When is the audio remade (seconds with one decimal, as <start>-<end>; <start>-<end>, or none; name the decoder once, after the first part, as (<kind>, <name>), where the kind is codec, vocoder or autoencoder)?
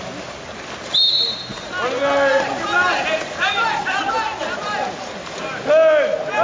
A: none